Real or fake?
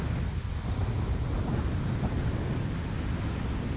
real